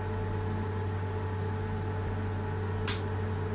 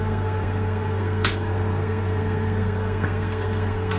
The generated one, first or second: second